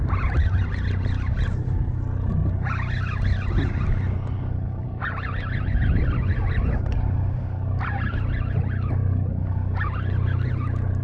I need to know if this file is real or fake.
real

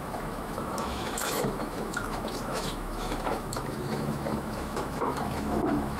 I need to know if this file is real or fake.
fake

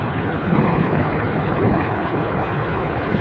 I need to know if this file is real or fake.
fake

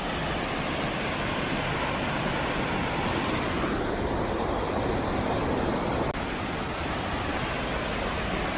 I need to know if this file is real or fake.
real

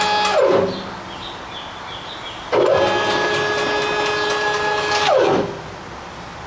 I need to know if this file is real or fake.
real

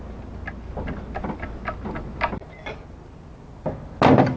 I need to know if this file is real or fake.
real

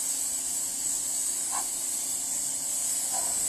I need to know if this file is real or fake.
real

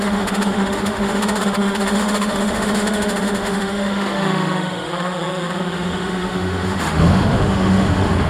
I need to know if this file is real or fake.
fake